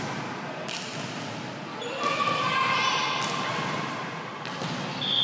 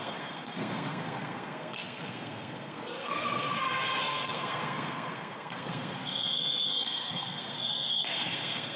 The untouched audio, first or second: first